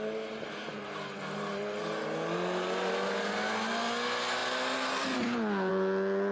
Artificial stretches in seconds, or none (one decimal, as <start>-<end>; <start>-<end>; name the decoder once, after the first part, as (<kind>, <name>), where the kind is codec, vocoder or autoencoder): none